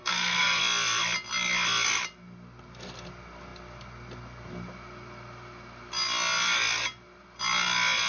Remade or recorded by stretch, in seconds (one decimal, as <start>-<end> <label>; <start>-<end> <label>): 0.0-0.6 remade; 0.6-8.1 recorded

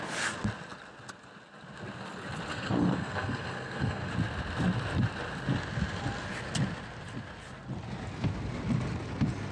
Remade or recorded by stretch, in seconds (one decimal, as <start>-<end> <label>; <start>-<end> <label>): 0.0-2.5 recorded; 2.5-4.1 remade; 4.1-9.5 recorded